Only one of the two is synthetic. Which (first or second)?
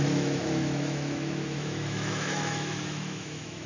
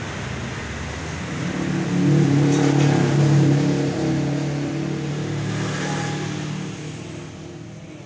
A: first